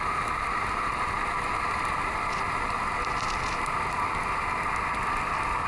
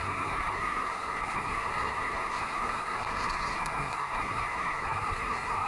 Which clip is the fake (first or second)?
second